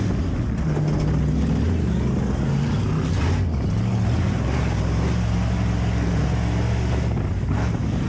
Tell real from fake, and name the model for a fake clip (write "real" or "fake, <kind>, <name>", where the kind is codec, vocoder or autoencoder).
real